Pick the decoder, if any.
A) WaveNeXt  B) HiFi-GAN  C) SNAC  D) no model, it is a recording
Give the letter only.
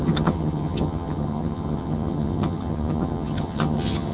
B